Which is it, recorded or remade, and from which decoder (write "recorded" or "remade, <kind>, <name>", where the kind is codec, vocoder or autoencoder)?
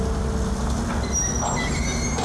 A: recorded